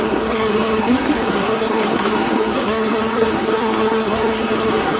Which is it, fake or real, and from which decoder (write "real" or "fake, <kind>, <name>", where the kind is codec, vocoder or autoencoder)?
fake, codec, SNAC